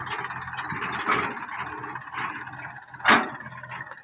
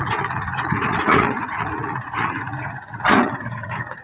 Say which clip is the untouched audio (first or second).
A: first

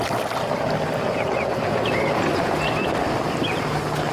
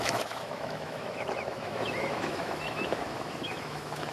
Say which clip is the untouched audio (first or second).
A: first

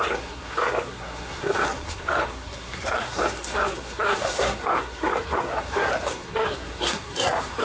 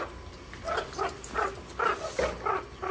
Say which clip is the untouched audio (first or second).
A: second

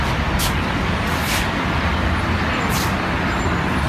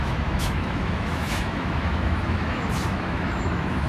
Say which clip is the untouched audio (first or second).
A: first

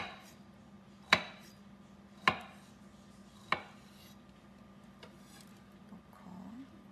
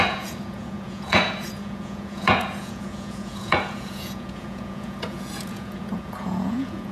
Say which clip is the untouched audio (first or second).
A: first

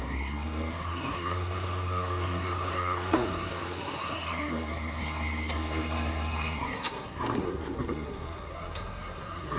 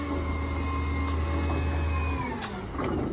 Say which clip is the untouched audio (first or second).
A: second